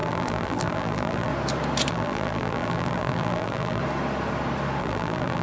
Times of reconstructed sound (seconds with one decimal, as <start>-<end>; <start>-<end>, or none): 0.0-1.3; 1.9-3.8; 4.8-5.4